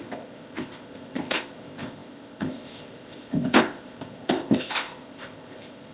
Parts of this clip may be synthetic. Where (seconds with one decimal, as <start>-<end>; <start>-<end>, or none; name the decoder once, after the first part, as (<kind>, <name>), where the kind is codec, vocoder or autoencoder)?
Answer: 0.0-5.9 (codec, ZipCodec)